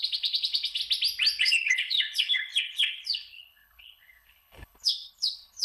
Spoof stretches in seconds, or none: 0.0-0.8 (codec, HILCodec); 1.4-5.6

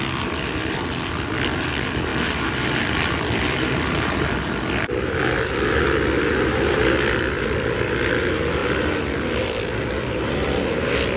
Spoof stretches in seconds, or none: none

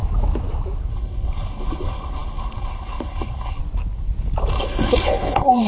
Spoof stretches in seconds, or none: 0.9-3.6 (codec, HILCodec); 4.5-5.7

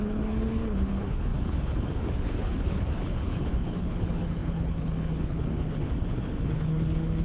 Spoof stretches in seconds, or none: 0.0-7.2 (codec, HILCodec)